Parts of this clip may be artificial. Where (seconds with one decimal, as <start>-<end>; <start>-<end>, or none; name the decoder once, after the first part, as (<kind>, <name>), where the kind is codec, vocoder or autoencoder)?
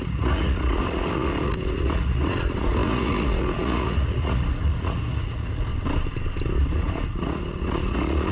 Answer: 0.0-5.7 (vocoder, Vocos); 6.7-8.3